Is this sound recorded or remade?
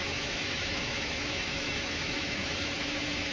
remade